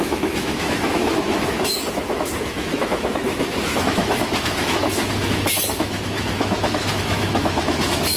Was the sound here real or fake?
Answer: fake